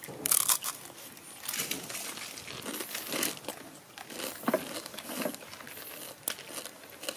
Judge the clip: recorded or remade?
recorded